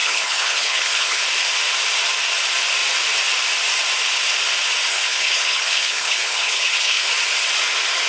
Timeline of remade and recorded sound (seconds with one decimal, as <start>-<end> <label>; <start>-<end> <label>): 0.0-1.2 remade; 1.2-4.9 recorded; 4.9-7.1 remade; 7.1-8.1 recorded